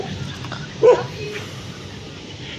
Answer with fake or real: fake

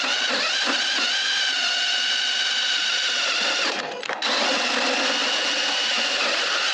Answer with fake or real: real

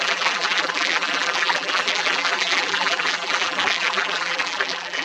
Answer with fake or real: fake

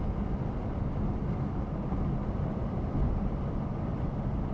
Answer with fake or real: real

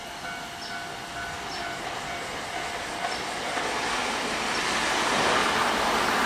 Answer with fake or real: real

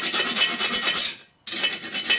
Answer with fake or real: real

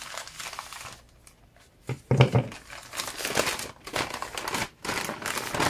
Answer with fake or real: real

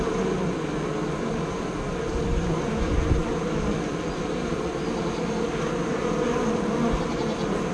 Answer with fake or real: real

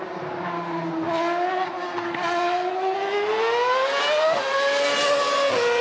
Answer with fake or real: real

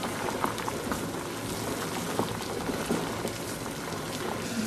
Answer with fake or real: real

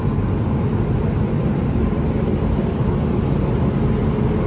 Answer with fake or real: real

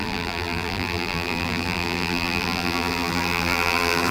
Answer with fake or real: fake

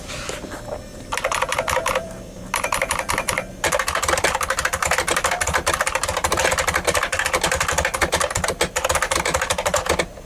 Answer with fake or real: fake